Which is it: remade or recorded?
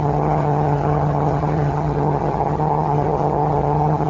remade